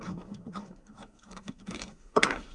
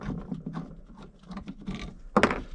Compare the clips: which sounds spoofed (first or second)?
first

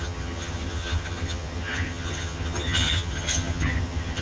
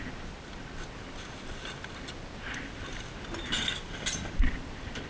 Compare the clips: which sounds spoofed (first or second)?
first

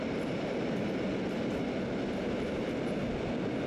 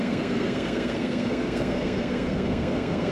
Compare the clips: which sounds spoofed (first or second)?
second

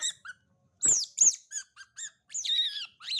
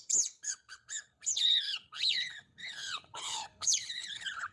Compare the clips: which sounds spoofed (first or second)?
second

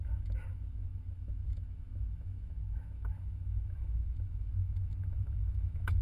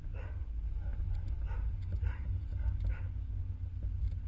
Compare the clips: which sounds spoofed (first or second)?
first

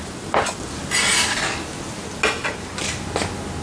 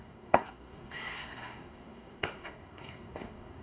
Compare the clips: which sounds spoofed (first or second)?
second